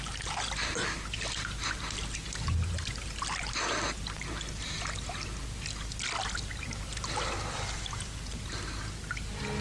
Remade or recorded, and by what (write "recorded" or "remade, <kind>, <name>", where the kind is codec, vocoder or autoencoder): recorded